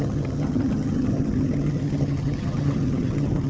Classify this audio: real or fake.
fake